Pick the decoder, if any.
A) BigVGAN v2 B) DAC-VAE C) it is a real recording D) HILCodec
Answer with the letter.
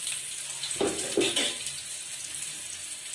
C